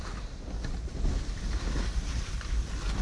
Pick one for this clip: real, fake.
real